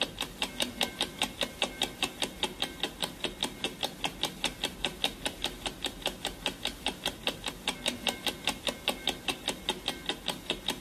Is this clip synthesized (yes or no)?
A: no